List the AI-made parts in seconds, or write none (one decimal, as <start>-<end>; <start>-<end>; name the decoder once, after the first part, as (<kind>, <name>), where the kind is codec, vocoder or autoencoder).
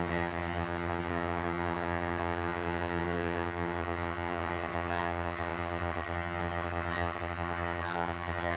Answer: 0.0-8.6 (vocoder, HiFi-GAN)